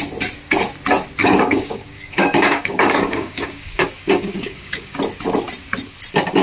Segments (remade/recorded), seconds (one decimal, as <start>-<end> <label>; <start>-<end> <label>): 0.0-1.2 recorded; 1.2-5.0 remade; 5.0-6.4 recorded